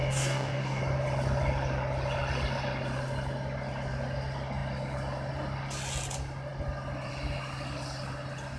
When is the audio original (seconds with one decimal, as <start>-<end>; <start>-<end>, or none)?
0.8-8.6